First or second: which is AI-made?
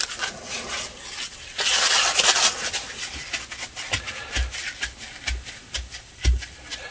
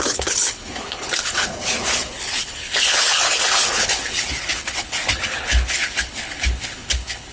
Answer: second